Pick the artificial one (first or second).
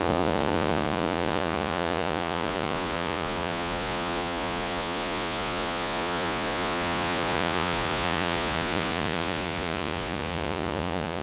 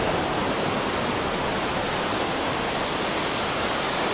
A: first